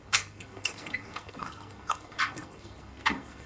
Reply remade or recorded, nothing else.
remade